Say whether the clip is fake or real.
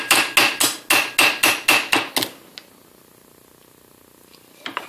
real